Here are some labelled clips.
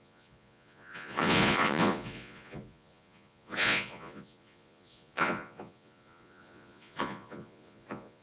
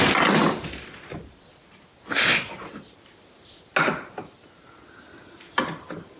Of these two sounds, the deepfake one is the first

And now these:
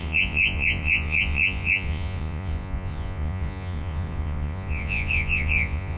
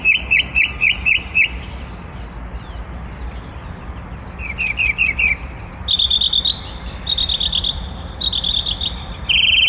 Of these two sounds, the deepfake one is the first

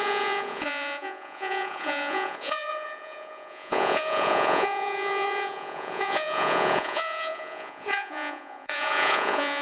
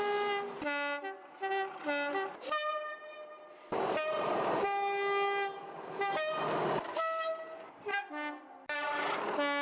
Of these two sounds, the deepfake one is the first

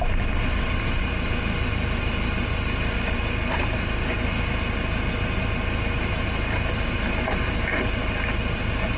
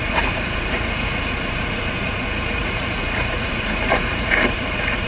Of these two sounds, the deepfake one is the second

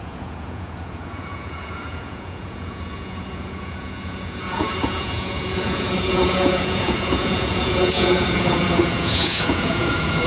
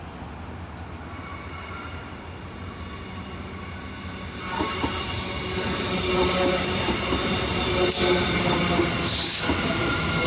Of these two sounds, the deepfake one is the first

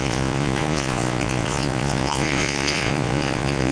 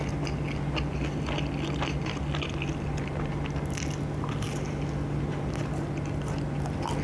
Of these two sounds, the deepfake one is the first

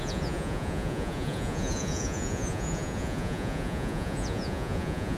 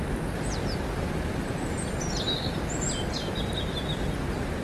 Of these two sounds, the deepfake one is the first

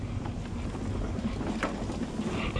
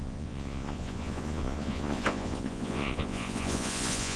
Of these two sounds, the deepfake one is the second